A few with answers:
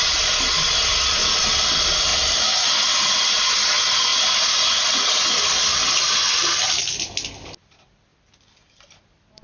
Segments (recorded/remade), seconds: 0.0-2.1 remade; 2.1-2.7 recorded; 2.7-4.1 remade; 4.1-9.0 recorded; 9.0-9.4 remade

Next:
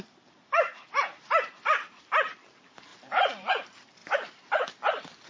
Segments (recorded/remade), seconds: 0.0-0.7 recorded; 0.7-1.3 remade; 1.3-2.9 recorded; 2.9-3.5 remade; 3.5-5.3 recorded

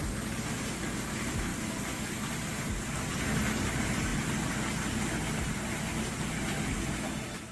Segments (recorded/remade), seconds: 0.0-1.5 recorded; 1.5-2.1 remade; 2.1-4.1 recorded; 4.1-6.1 remade; 6.1-7.5 recorded

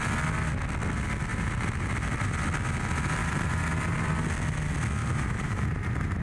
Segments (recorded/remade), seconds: 0.0-1.3 recorded; 1.3-1.9 remade; 1.9-3.2 recorded; 3.2-4.1 remade; 4.1-5.0 recorded; 5.0-6.2 remade

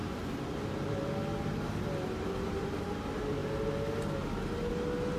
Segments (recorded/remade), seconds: 0.0-1.1 remade; 1.1-5.2 recorded

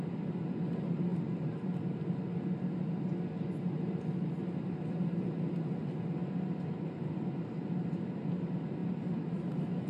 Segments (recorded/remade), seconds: 0.0-1.1 recorded; 1.1-1.8 remade; 1.8-9.9 recorded

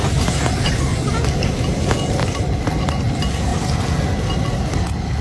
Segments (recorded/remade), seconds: 0.0-0.9 recorded; 0.9-1.6 remade; 1.6-5.2 recorded

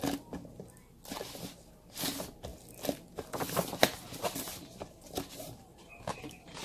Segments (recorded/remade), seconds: 0.0-6.6 recorded